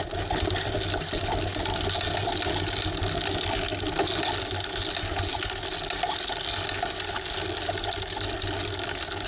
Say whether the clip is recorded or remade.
recorded